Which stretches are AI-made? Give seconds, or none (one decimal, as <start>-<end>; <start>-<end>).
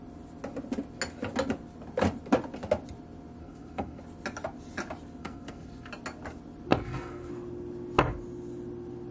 3.4-4.0; 5.2-5.9; 6.7-7.3